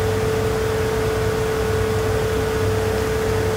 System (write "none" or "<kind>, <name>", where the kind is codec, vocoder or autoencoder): none